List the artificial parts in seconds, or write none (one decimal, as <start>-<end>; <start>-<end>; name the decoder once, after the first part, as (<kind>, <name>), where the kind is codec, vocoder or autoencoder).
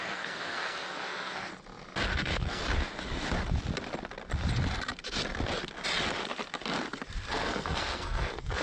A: 0.0-1.5 (codec, SNAC); 2.1-2.6; 7.3-8.6